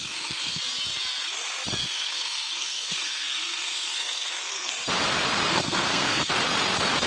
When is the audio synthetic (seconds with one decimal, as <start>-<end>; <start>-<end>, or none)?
0.0-0.6; 1.8-4.7; 5.5-6.3